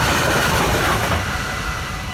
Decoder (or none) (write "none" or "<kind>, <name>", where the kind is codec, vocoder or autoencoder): vocoder, BigVGAN v2